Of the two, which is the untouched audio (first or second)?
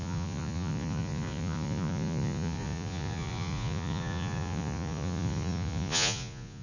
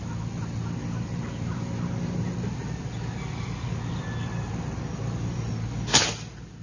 second